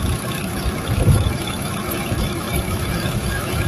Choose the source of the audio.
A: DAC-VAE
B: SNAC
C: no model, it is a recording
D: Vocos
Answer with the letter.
A